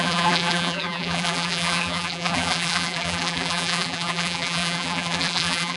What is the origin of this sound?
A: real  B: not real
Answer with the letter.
B